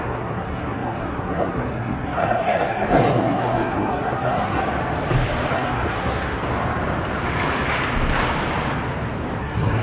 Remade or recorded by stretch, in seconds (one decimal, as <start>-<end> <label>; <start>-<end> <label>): 0.0-4.6 remade; 4.6-5.5 recorded; 5.5-6.4 remade; 6.4-9.4 recorded; 9.4-9.8 remade